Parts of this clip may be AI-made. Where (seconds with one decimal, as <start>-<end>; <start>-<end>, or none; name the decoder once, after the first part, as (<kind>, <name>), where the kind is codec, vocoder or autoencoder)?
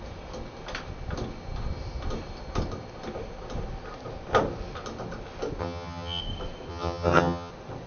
5.6-6.2 (vocoder, HiFi-GAN); 6.7-7.5